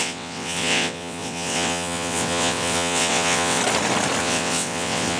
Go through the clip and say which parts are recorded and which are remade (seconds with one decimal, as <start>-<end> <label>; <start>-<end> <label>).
0.0-3.6 remade; 3.6-4.2 recorded; 4.2-5.2 remade